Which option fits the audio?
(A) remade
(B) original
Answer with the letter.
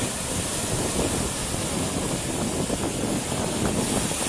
B